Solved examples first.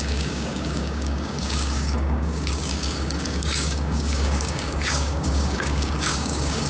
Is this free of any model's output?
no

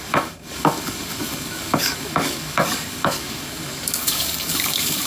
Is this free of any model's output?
no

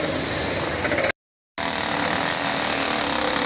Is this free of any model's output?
yes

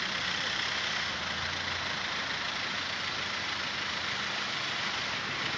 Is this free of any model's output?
yes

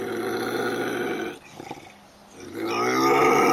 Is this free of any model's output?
yes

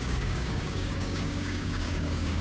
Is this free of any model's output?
no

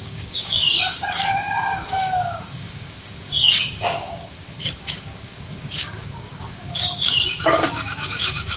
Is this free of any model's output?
no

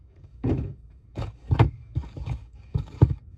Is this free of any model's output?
no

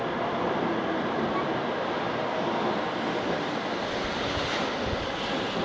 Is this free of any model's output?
yes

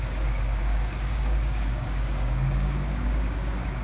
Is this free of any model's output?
no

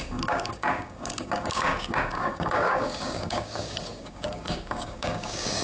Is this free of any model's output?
no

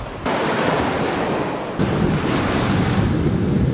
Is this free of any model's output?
yes